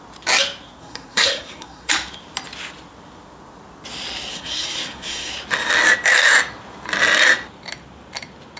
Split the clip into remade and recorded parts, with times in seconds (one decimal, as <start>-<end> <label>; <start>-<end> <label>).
0.0-0.8 recorded; 0.8-1.9 remade; 1.9-4.3 recorded; 4.3-5.3 remade; 5.3-8.6 recorded